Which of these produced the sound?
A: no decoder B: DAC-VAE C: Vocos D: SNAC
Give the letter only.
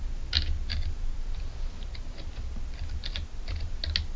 A